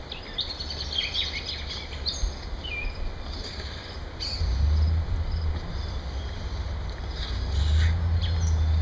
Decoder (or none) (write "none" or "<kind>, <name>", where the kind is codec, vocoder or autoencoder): none